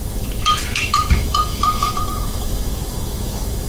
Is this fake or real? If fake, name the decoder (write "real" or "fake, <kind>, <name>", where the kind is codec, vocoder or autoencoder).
fake, autoencoder, DAC-VAE